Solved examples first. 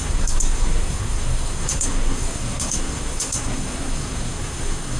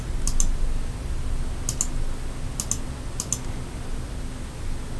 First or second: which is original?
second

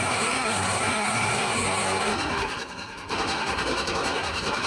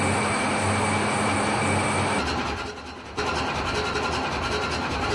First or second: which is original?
second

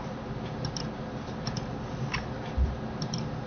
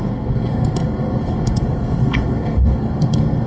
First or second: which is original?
first